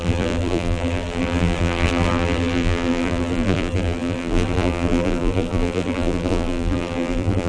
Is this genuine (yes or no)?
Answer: no